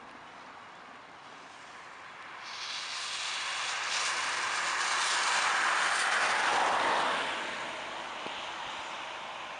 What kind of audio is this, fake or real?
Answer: real